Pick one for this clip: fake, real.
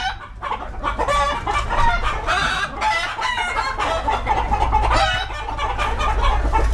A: real